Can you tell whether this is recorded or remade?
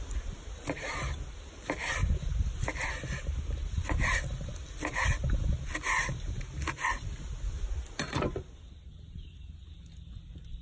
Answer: recorded